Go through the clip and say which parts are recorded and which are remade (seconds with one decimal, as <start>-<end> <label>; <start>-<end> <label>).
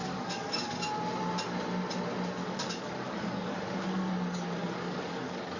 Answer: 0.0-0.7 remade; 0.7-2.4 recorded; 2.4-4.1 remade; 4.1-4.6 recorded; 4.6-5.6 remade